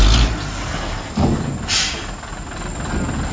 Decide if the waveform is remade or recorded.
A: recorded